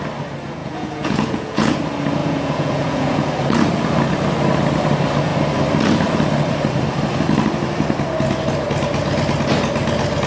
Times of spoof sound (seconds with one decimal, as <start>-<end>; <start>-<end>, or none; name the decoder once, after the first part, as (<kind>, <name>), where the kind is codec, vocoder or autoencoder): 0.6-1.8 (vocoder, Vocos); 2.2-3.3